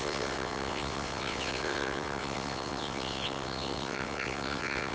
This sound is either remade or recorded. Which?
remade